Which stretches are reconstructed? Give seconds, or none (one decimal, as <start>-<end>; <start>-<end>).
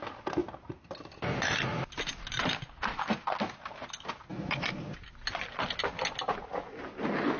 none